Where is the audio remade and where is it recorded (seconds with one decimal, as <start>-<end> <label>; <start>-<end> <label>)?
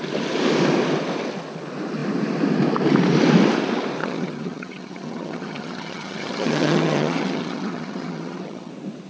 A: 0.0-4.0 recorded; 4.0-8.7 remade; 8.7-9.1 recorded